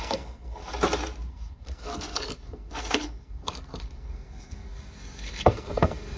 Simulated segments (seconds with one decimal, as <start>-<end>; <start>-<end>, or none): 0.0-0.6; 1.3-6.2